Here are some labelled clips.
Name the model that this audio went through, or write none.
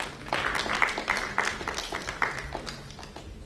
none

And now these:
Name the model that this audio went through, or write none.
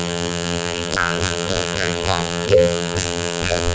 vocoder, BigVGAN v2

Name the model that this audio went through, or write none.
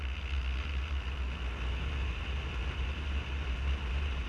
none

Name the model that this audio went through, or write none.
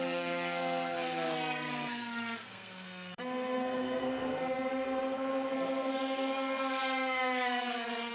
codec, SNAC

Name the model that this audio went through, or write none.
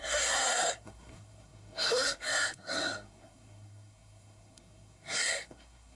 codec, SNAC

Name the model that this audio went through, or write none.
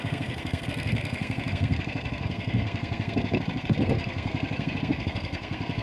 codec, SNAC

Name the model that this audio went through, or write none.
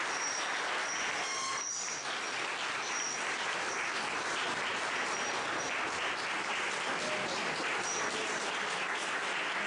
none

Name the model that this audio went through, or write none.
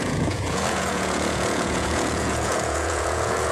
vocoder, Vocos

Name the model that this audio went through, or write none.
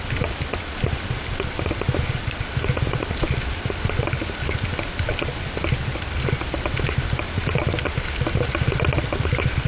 none